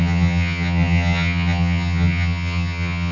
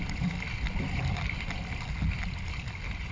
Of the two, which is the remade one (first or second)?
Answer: first